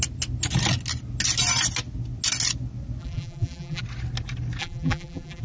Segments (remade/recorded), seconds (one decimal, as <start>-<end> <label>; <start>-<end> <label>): 0.0-3.0 recorded; 3.0-3.8 remade; 3.8-4.6 recorded; 4.6-5.4 remade